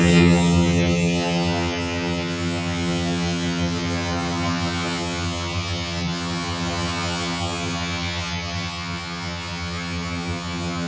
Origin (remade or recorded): remade